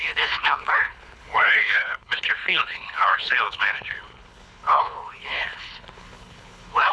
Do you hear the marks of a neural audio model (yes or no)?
yes